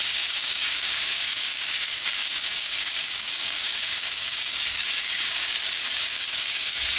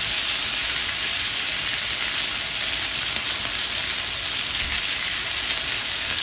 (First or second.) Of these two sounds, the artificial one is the first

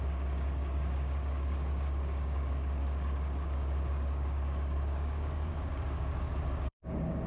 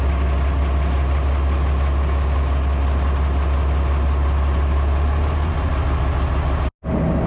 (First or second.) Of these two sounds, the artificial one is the first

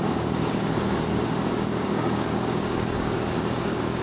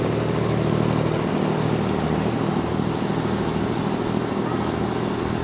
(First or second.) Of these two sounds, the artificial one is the first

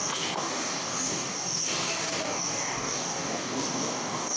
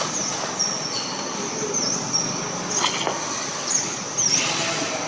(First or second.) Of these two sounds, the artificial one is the first